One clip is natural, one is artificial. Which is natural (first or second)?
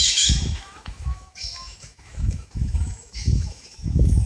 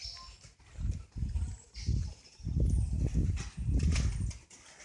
second